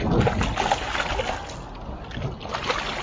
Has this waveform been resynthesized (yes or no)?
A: no